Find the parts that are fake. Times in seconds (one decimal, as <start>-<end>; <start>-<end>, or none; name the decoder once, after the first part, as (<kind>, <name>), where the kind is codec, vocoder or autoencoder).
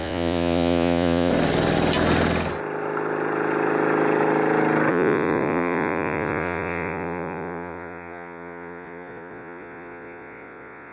0.0-1.3 (vocoder, Vocos); 4.9-10.9